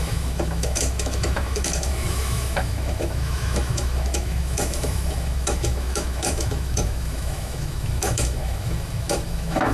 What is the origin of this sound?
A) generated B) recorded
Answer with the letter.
A